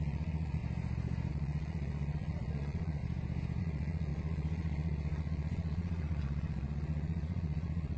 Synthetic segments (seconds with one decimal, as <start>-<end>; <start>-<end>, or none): 0.0-0.6; 1.3-3.0; 3.6-8.0